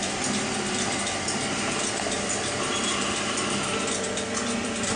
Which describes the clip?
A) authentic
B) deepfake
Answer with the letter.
B